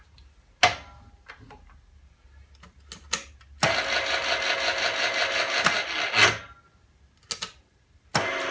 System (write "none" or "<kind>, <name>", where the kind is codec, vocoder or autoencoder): none